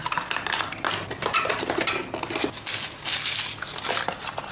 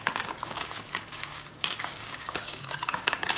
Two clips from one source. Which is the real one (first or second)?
first